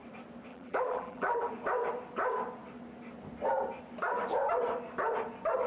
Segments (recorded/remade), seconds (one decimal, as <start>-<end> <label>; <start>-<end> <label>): 0.0-0.5 recorded; 0.5-1.5 remade; 1.5-5.7 recorded